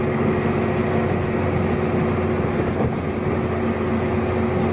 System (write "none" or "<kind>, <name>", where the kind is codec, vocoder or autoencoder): none